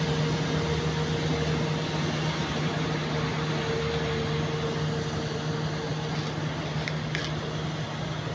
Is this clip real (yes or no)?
yes